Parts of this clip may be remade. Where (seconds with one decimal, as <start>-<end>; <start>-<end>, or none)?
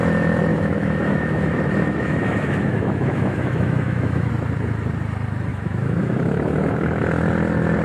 0.5-4.3; 5.5-7.0